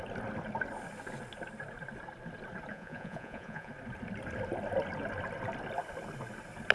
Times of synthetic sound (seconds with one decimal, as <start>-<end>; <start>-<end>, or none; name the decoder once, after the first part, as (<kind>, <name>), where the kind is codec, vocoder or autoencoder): 2.7-3.7 (vocoder, Vocos)